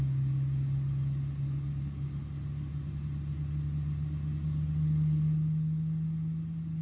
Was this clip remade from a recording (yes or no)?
no